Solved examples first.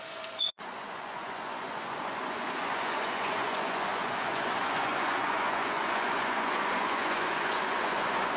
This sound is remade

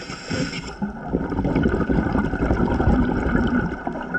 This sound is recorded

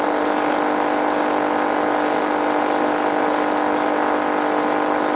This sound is recorded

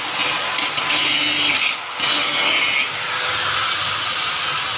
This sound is recorded